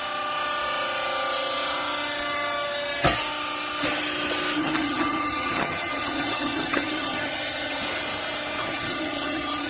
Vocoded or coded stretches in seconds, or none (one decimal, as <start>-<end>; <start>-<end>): 4.6-7.8; 8.6-9.7